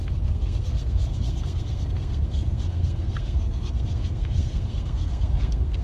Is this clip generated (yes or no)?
yes